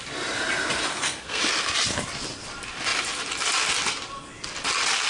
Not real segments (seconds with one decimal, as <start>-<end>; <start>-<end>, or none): 0.9-1.4